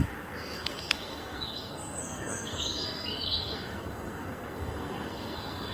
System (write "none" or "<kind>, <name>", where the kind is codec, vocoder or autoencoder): codec, SNAC